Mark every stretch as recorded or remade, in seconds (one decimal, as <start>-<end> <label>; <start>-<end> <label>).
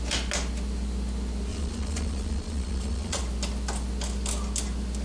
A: 0.0-1.5 recorded; 1.5-3.2 remade; 3.2-5.0 recorded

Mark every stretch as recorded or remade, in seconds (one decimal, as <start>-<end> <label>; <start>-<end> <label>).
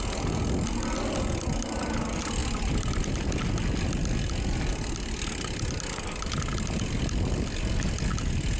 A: 0.0-8.6 recorded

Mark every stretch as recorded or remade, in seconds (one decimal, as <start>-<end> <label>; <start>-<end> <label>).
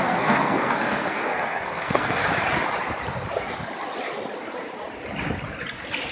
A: 0.0-2.2 remade; 2.2-6.1 recorded